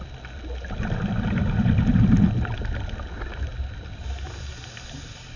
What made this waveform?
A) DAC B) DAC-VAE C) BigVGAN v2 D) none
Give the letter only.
D